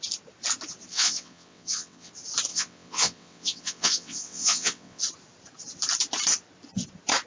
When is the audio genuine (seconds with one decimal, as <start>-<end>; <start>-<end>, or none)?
0.0-0.9; 2.1-2.5; 5.0-7.3